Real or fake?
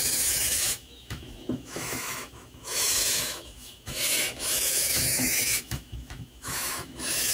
fake